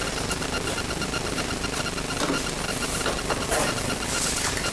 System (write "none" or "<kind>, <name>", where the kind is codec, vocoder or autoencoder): none